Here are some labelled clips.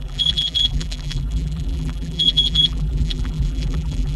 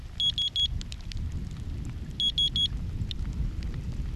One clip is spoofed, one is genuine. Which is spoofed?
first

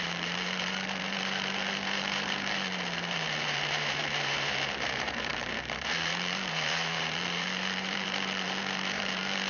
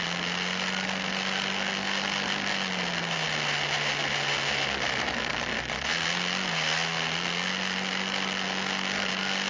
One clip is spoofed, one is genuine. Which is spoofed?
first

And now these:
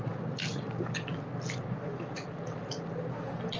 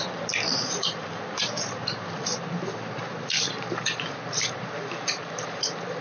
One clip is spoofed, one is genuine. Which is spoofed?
second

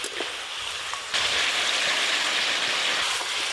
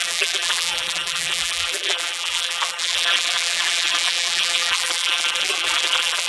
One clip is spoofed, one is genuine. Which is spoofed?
second